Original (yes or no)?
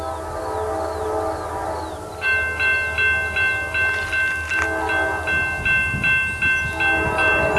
yes